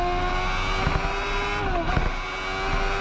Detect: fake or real real